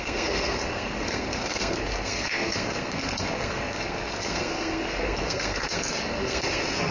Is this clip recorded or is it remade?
remade